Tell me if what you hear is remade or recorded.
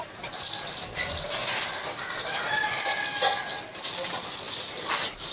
recorded